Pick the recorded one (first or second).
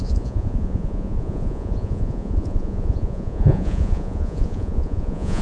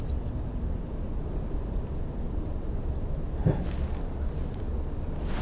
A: second